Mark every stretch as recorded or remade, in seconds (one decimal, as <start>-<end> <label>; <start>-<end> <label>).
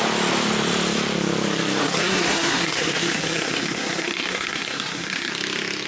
0.0-1.8 recorded; 1.8-5.3 remade; 5.3-5.9 recorded